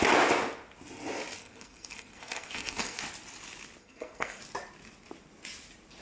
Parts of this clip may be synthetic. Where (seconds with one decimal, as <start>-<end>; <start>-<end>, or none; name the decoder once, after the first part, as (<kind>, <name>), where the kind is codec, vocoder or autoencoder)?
1.4-3.0 (codec, SNAC); 3.8-4.4